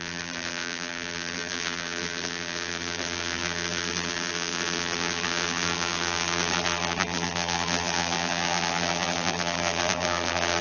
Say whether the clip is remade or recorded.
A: remade